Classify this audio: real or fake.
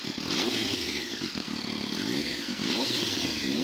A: fake